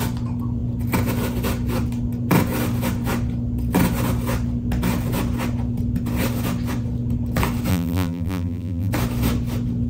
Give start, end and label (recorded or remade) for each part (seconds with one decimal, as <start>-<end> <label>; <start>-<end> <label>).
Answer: 0.0-7.7 recorded; 7.7-8.9 remade; 8.9-9.9 recorded